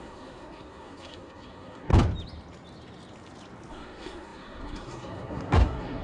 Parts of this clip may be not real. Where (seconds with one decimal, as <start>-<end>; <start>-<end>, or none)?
0.0-1.9; 3.7-6.0